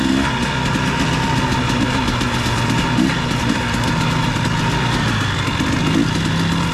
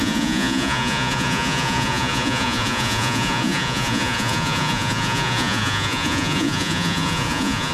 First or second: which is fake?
second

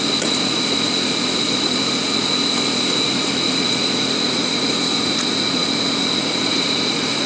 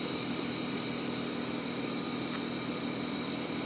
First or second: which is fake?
first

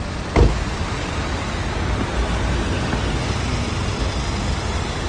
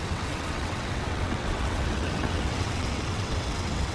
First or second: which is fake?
second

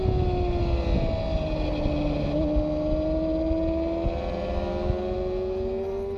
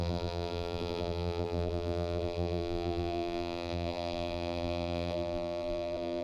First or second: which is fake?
second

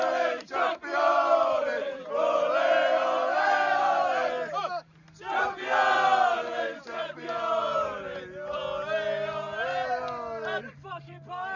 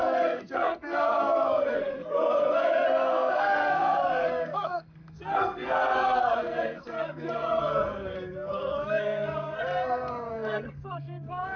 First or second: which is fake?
second